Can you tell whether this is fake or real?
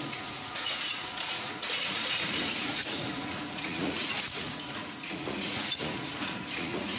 fake